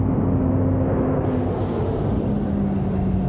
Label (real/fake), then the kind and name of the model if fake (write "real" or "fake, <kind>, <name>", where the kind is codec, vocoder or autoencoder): real